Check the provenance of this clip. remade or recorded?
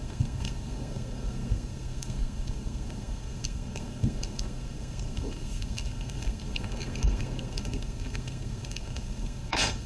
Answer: remade